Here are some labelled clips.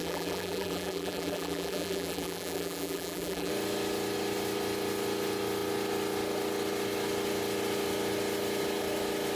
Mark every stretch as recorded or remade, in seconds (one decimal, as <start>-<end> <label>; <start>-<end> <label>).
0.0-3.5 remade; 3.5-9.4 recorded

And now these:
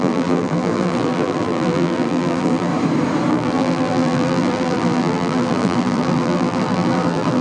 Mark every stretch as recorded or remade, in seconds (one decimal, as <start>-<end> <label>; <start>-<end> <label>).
0.0-2.7 remade; 2.7-3.3 recorded; 3.3-7.4 remade

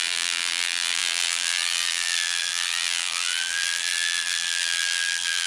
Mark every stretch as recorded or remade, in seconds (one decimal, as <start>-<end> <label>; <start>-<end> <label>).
0.0-5.5 remade

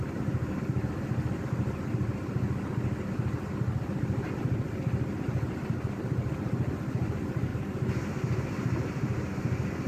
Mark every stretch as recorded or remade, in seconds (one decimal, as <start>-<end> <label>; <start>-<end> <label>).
0.0-9.9 recorded

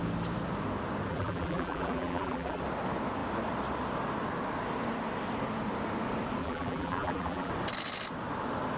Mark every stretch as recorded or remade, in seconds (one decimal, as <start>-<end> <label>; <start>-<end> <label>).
0.0-1.1 recorded; 1.1-2.6 remade; 2.6-6.4 recorded; 6.4-7.5 remade; 7.5-8.8 recorded